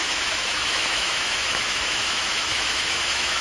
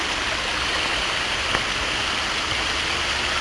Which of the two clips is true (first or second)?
second